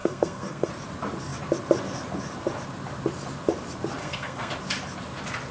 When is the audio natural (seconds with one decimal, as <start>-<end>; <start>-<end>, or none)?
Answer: 0.7-4.0; 4.5-5.5